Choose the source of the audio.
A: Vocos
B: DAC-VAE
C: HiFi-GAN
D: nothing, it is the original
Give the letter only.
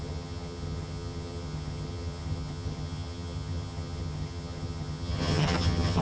C